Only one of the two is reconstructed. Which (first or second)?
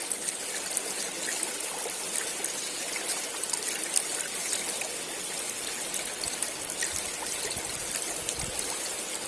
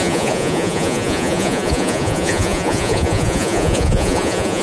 second